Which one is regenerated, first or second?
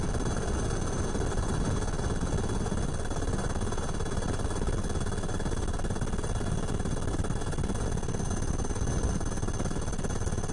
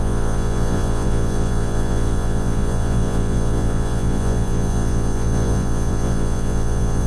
second